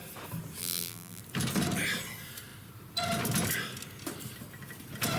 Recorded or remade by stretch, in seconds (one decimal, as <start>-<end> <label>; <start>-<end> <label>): 0.0-0.6 recorded; 0.6-1.2 remade; 1.2-5.2 recorded